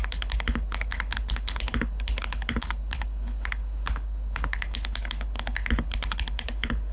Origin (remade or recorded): remade